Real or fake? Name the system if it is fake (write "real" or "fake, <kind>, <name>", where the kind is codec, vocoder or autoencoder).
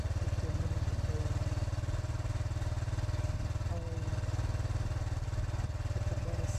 real